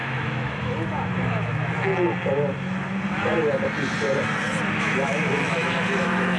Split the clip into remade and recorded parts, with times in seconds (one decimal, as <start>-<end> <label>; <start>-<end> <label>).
0.0-1.9 remade; 1.9-4.8 recorded; 4.8-6.4 remade